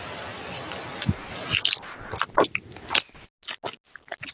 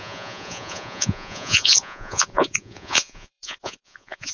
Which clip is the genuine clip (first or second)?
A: first